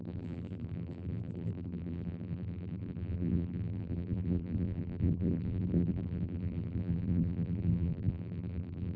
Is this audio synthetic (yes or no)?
yes